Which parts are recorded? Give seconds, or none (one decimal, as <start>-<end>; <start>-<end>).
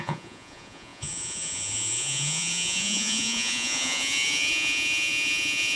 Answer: none